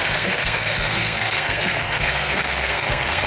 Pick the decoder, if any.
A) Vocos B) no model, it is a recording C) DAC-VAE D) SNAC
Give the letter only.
D